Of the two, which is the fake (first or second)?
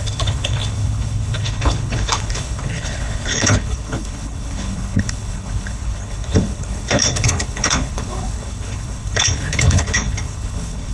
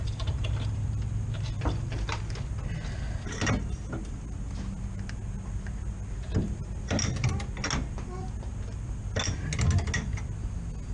first